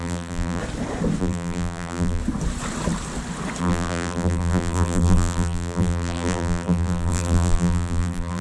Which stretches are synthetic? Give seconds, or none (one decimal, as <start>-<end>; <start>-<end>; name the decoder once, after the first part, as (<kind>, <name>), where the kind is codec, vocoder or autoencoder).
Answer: 0.0-0.6 (vocoder, BigVGAN v2); 1.2-2.2; 3.6-8.4